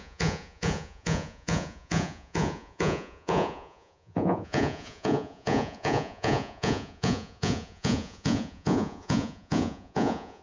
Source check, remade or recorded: remade